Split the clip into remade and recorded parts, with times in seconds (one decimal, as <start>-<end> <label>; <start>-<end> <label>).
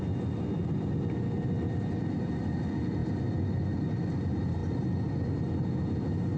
0.0-6.4 recorded